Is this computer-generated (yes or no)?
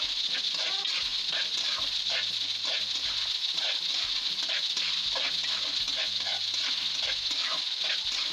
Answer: no